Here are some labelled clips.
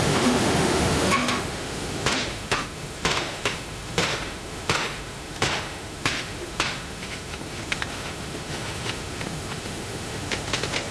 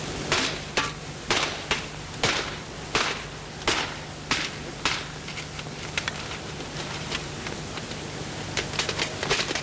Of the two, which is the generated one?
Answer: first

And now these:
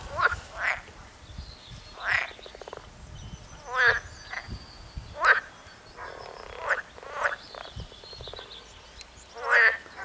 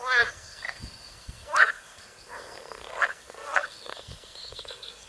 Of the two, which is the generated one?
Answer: second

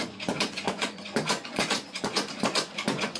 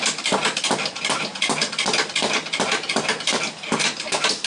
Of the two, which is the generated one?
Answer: first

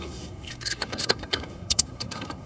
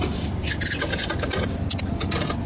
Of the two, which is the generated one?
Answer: first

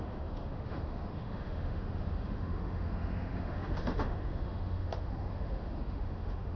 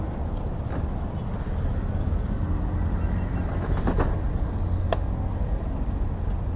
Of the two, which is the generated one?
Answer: first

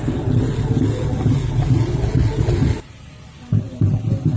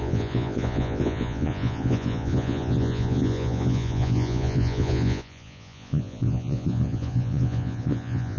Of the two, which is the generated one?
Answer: second